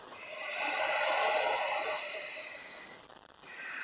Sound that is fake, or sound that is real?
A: real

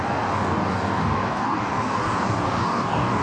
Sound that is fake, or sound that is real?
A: fake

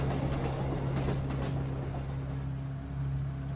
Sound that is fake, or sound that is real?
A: real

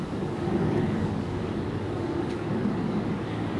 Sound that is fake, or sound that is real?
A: fake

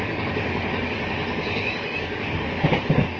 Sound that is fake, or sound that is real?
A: fake